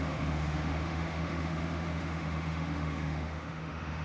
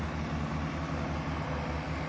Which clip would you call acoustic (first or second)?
second